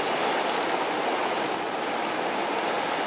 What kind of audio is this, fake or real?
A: real